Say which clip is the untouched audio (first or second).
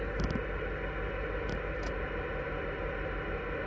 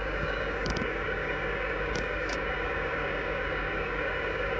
first